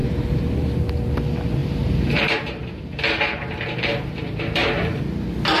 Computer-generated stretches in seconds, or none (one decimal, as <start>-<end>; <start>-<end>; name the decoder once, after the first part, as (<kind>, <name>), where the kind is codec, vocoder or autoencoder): 0.0-0.8 (vocoder, BigVGAN v2); 1.6-5.0